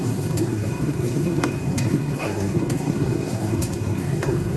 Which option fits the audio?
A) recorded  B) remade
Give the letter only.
B